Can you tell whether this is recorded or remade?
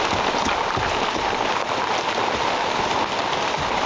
recorded